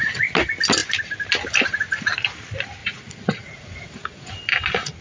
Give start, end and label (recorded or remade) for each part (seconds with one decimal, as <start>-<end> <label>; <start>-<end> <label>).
0.0-2.8 recorded; 2.8-4.3 remade; 4.3-5.0 recorded

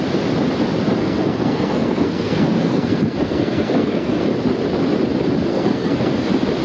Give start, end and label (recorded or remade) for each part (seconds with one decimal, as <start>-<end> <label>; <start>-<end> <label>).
0.0-1.0 recorded; 1.0-4.3 remade; 4.3-5.5 recorded; 5.5-6.1 remade; 6.1-6.6 recorded